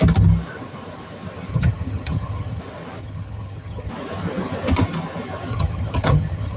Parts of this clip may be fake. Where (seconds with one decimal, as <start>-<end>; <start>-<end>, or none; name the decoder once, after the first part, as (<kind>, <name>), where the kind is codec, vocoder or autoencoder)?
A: 1.5-2.6 (vocoder, HiFi-GAN); 3.0-3.9; 5.5-6.6